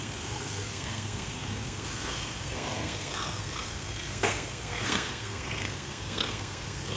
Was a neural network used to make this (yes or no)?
yes